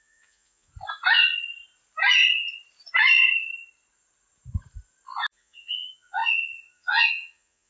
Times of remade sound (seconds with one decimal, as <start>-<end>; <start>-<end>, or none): 0.0-0.7; 5.3-7.7